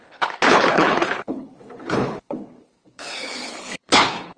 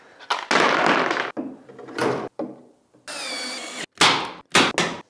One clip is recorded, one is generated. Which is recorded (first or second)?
second